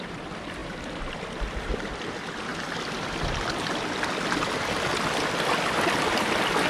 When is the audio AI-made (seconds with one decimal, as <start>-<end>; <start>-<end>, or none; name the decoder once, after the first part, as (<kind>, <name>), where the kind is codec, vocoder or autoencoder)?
0.6-1.1 (vocoder, BigVGAN v2)